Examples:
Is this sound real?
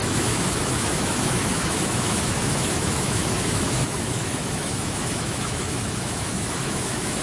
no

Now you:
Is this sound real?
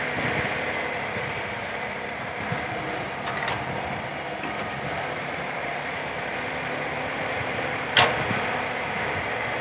no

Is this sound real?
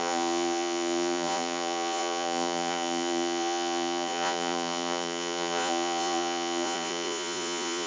no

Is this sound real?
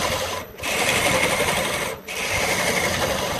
no